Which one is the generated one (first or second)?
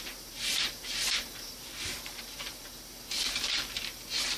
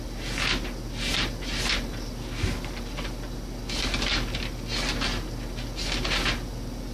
first